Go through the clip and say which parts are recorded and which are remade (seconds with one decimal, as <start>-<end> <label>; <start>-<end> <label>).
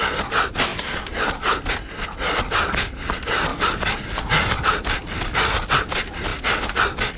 0.0-0.7 recorded; 0.7-1.7 remade; 1.7-3.5 recorded; 3.5-4.2 remade; 4.2-7.2 recorded